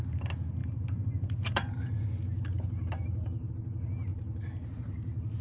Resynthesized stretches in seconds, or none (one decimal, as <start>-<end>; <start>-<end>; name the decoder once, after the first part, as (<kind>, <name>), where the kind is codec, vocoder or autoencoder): 0.6-3.5 (vocoder, BigVGAN v2); 4.1-5.4